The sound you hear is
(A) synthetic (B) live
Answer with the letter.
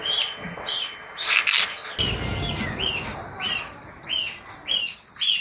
B